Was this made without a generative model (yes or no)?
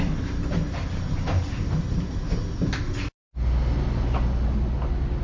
yes